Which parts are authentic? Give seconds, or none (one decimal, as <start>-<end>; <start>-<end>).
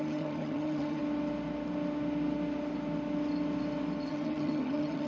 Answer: 1.0-4.1